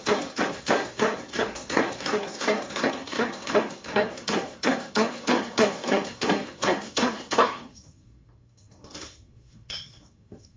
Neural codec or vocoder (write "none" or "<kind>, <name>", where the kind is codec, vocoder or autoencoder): codec, SNAC